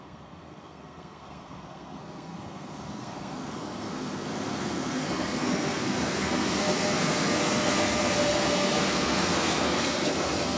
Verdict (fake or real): fake